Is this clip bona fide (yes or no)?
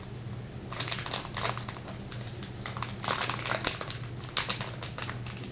yes